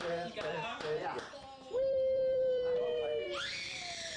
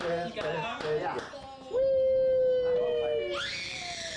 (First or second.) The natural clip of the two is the second